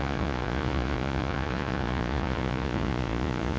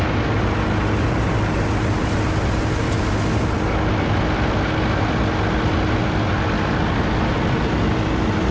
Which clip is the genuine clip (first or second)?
second